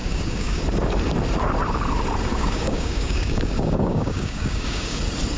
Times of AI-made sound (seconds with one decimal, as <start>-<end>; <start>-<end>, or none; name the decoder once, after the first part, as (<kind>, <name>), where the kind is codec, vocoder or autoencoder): 0.0-0.6 (codec, DAC); 2.3-5.0

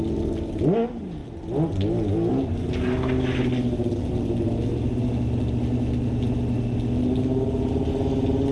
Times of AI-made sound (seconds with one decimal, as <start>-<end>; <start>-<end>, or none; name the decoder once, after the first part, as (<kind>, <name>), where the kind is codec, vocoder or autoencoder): none